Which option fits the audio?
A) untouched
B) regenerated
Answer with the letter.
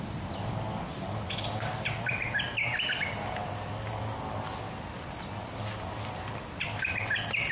A